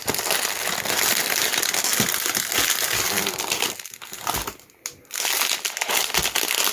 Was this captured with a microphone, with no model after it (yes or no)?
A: yes